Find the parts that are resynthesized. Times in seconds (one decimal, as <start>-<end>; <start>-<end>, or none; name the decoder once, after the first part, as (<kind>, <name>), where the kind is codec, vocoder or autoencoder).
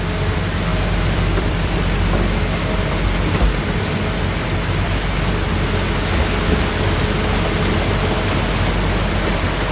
0.7-1.8 (vocoder, BigVGAN v2)